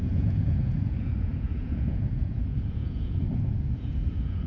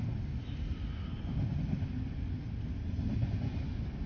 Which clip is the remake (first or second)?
first